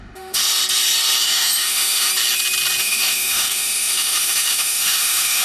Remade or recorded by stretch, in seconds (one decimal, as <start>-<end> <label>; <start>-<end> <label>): 0.0-0.4 remade; 0.4-1.2 recorded; 1.2-2.1 remade; 2.1-2.8 recorded; 2.8-5.4 remade